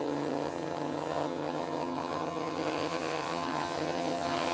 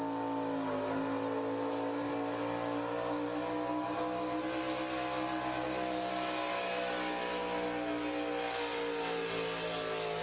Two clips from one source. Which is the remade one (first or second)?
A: first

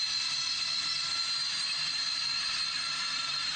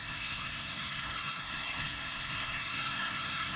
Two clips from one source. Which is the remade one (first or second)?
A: second